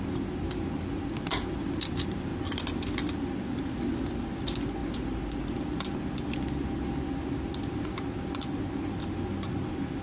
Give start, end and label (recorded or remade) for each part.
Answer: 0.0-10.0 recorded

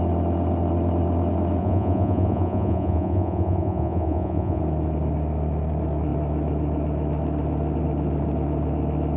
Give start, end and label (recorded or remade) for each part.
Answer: 0.0-1.6 recorded; 1.6-4.6 remade; 4.6-9.2 recorded

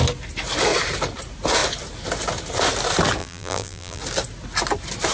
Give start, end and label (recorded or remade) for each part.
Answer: 0.0-3.2 recorded; 3.2-4.0 remade; 4.0-5.1 recorded